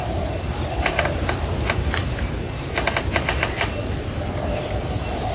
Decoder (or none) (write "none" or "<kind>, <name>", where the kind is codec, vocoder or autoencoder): none